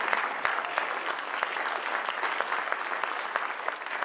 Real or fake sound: real